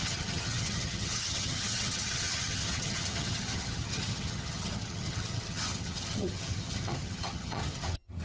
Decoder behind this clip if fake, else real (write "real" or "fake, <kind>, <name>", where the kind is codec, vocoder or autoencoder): fake, vocoder, HiFi-GAN